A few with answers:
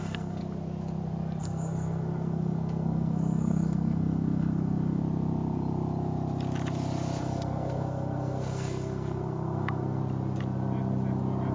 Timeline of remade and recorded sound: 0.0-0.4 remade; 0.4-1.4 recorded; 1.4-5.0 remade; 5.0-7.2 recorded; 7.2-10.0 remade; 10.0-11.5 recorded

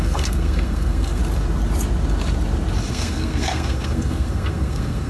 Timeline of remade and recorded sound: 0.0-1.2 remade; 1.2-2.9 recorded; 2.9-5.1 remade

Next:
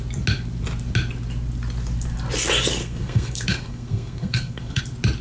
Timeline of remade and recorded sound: 0.0-2.8 recorded; 2.8-4.8 remade; 4.8-5.2 recorded

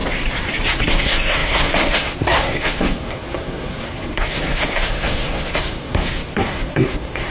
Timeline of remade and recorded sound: 0.0-0.9 recorded; 0.9-7.3 remade

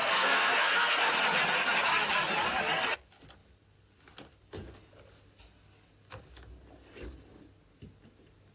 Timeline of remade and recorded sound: 0.0-1.1 remade; 1.1-8.5 recorded

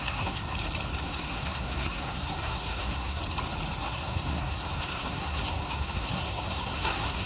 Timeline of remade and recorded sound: 0.0-0.4 remade; 0.4-1.0 recorded; 1.0-3.2 remade; 3.2-3.8 recorded; 3.8-7.3 remade